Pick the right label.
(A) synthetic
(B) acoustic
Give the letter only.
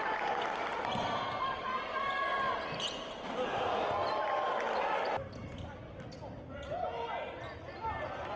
B